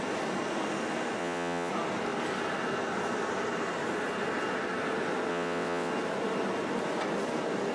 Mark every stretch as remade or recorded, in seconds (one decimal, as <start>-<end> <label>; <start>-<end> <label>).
0.0-1.2 recorded; 1.2-1.7 remade; 1.7-5.3 recorded; 5.3-5.9 remade; 5.9-7.7 recorded